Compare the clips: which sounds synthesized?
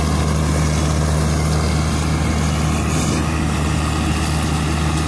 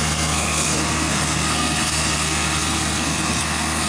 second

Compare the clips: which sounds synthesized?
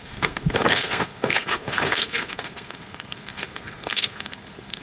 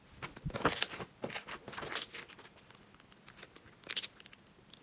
first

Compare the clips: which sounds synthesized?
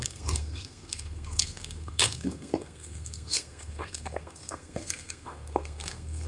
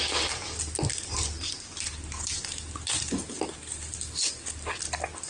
first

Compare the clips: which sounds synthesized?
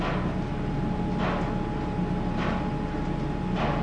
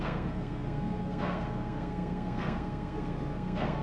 second